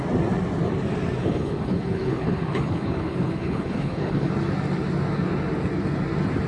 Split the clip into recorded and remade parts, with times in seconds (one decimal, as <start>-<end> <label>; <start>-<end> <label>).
0.0-1.2 recorded; 1.2-4.3 remade; 4.3-6.5 recorded